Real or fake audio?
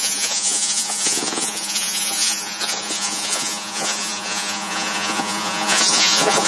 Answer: fake